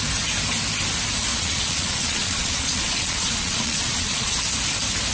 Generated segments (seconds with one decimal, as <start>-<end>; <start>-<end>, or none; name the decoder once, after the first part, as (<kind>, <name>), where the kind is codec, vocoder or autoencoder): 1.3-4.4 (vocoder, Vocos)